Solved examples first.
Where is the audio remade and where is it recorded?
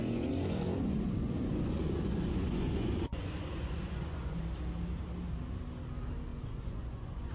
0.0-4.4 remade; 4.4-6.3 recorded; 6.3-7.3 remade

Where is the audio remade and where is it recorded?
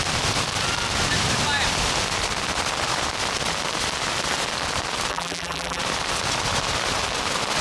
0.0-5.1 recorded; 5.1-5.8 remade; 5.8-7.6 recorded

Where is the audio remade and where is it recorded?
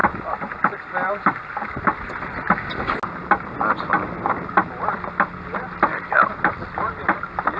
0.0-7.6 recorded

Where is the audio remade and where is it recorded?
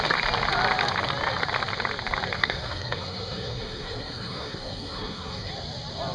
0.0-2.4 recorded; 2.4-5.5 remade; 5.5-6.1 recorded